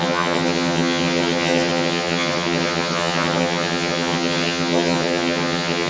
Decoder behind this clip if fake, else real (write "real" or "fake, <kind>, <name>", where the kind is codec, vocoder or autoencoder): fake, vocoder, HiFi-GAN